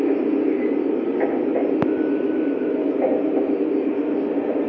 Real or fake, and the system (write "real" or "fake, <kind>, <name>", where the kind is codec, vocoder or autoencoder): real